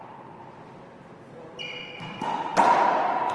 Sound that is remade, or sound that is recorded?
recorded